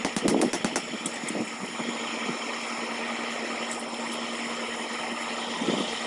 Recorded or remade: recorded